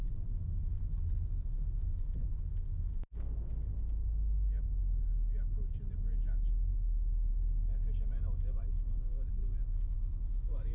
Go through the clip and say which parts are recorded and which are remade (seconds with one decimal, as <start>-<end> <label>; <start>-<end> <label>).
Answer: 0.0-6.7 recorded; 6.7-7.3 remade; 7.3-10.7 recorded

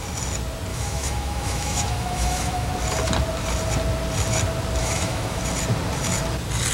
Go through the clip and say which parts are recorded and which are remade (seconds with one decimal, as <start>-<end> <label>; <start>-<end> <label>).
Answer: 0.0-0.7 recorded; 0.7-2.7 remade; 2.7-4.8 recorded; 4.8-5.4 remade; 5.4-6.7 recorded

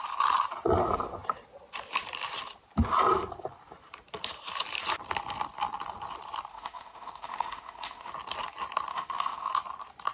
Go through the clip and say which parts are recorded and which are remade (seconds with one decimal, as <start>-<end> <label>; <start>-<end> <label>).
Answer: 0.0-6.5 recorded; 6.5-8.1 remade; 8.1-8.9 recorded; 8.9-9.5 remade; 9.5-10.1 recorded

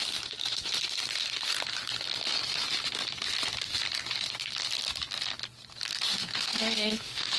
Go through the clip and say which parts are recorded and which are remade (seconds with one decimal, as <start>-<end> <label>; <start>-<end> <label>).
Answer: 0.0-6.2 recorded; 6.2-7.4 remade

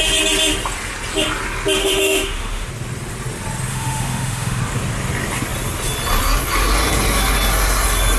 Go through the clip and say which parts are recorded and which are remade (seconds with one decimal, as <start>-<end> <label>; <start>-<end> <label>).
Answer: 0.0-1.8 recorded; 1.8-2.7 remade; 2.7-3.7 recorded; 3.7-4.6 remade; 4.6-8.2 recorded

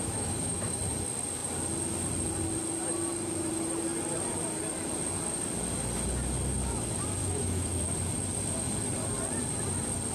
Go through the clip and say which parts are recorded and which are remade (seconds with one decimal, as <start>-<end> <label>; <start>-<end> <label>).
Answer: 0.0-0.8 remade; 0.8-7.2 recorded; 7.2-7.9 remade; 7.9-10.1 recorded

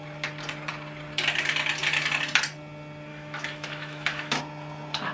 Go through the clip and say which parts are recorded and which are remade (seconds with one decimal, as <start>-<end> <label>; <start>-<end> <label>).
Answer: 0.0-3.1 recorded; 3.1-4.4 remade; 4.4-5.1 recorded

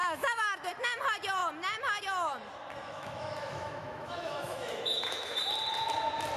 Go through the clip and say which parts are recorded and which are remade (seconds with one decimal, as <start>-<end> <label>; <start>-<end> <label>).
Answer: 0.0-0.7 remade; 0.7-2.8 recorded; 2.8-5.4 remade; 5.4-6.4 recorded